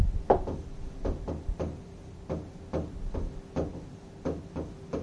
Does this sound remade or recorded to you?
recorded